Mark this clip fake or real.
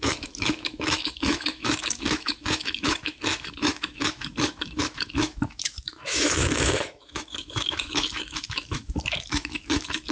fake